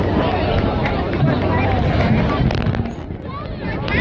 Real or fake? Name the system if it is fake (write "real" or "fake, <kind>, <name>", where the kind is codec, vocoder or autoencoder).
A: real